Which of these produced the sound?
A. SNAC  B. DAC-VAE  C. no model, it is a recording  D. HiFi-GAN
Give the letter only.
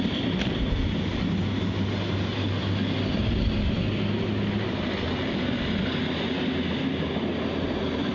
C